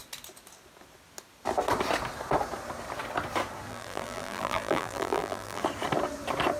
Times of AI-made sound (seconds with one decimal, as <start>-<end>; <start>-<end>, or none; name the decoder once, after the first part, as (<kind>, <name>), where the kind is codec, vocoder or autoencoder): 3.7-5.6 (vocoder, BigVGAN v2)